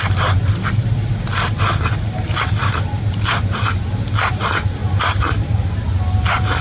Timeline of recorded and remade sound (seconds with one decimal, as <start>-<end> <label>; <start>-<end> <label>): 0.0-4.8 recorded; 4.8-5.7 remade; 5.7-6.6 recorded